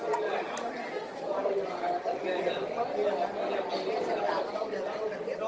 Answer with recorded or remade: recorded